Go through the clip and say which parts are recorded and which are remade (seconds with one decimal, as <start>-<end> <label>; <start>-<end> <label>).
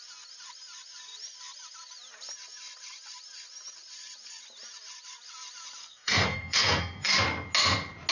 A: 0.0-5.8 recorded; 5.8-7.1 remade; 7.1-8.1 recorded